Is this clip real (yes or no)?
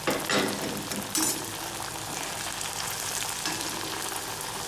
yes